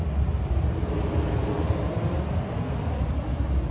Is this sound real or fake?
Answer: real